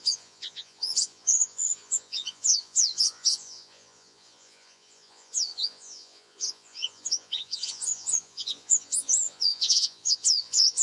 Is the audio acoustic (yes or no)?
no